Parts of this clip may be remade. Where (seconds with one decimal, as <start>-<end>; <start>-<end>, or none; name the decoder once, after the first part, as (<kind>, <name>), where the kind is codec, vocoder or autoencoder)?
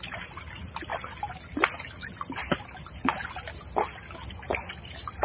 0.0-0.9 (vocoder, BigVGAN v2); 1.5-3.2; 4.7-5.2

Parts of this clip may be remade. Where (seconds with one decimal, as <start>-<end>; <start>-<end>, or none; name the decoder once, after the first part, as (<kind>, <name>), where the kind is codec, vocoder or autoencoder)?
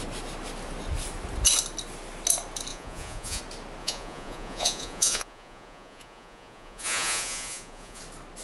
2.7-3.4 (vocoder, Vocos); 3.8-8.0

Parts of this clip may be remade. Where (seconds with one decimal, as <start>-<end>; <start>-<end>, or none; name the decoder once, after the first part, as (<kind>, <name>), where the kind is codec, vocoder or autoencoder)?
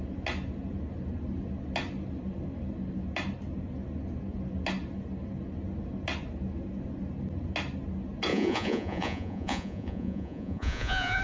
8.3-11.2 (vocoder, Vocos)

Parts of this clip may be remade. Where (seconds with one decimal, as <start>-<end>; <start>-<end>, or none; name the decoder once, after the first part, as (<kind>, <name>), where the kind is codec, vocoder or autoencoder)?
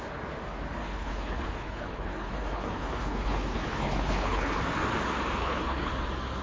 0.8-4.6 (codec, HILCodec); 5.4-5.9